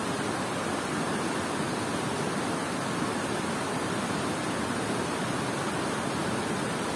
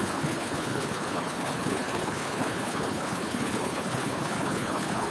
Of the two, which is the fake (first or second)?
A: second